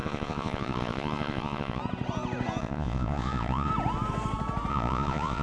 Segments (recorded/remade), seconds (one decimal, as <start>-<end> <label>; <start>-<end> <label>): 0.0-1.8 remade; 1.8-2.6 recorded; 2.6-3.7 remade; 3.7-4.7 recorded; 4.7-5.4 remade